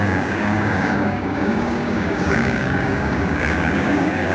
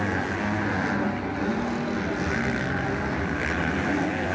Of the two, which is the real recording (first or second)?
second